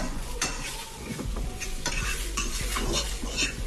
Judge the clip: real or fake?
fake